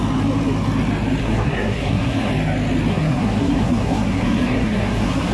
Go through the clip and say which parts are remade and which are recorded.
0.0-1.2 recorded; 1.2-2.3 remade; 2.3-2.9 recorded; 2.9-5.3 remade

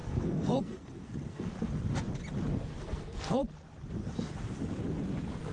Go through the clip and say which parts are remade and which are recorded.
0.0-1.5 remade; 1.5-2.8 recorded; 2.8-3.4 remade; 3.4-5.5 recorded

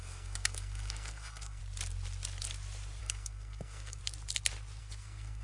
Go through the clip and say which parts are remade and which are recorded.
0.0-1.6 remade; 1.6-3.0 recorded; 3.0-4.0 remade; 4.0-4.8 recorded; 4.8-5.4 remade

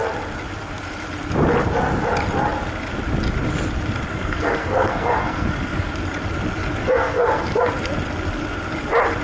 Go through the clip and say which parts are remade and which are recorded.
0.0-4.1 recorded; 4.1-5.9 remade; 5.9-6.8 recorded; 6.8-7.7 remade; 7.7-9.2 recorded

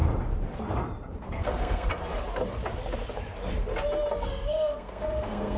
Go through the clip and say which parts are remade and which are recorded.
0.0-1.2 recorded; 1.2-1.9 remade; 1.9-4.1 recorded; 4.1-5.6 remade

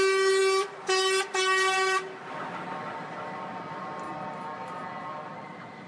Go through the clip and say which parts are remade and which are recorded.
0.0-5.9 recorded

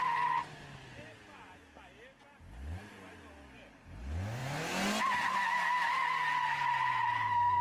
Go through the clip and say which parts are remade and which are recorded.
0.0-7.6 recorded